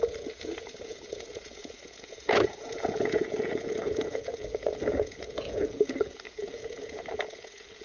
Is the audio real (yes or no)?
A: no